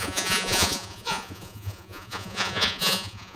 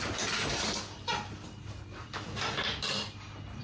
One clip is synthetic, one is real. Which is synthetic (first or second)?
first